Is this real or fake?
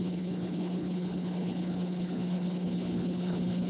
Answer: fake